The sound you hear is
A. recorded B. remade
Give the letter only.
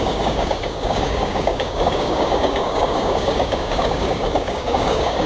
B